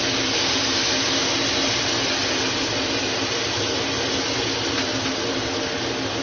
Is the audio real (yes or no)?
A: yes